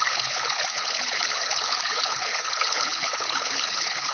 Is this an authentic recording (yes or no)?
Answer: no